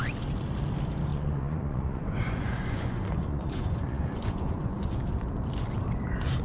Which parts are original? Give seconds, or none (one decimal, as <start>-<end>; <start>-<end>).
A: 0.0-1.1; 4.9-6.4